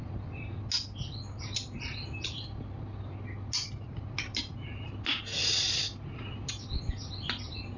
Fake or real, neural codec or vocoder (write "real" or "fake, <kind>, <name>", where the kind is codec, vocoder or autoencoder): real